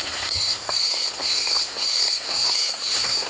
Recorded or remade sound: remade